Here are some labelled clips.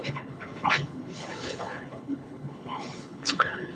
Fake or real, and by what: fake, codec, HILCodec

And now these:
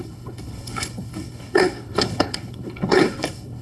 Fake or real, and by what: fake, codec, HILCodec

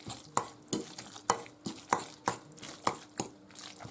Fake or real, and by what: real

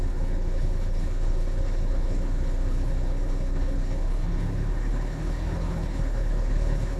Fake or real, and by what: fake, codec, HILCodec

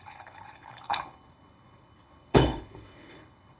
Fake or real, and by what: fake, codec, HILCodec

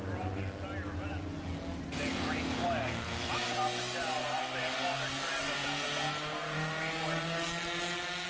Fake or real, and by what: real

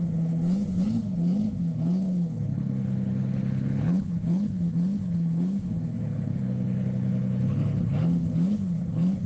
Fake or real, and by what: fake, codec, HILCodec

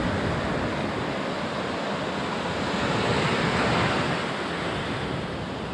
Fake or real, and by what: real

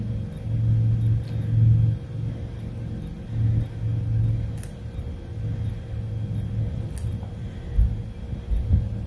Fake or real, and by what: real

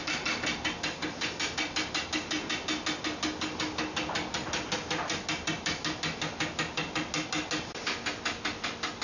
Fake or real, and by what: real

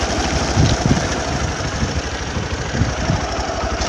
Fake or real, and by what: real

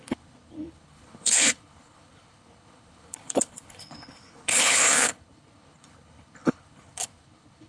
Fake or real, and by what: fake, codec, HILCodec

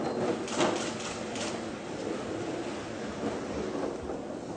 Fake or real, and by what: real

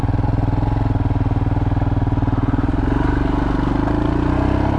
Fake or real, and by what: real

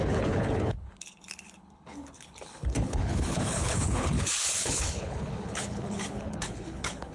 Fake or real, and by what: fake, codec, HILCodec